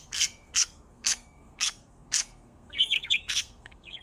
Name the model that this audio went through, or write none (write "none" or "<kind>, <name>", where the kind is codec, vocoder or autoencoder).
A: codec, SNAC